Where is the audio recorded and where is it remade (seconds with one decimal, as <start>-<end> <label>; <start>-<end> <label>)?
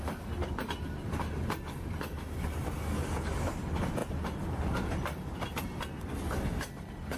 0.0-7.2 recorded